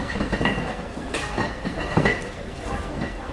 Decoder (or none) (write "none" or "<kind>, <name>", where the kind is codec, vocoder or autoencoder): codec, SNAC